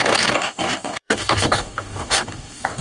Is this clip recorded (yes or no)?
no